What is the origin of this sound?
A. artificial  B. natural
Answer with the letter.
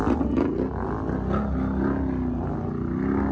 B